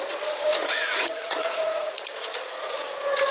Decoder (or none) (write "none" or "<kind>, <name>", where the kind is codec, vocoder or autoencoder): vocoder, Vocos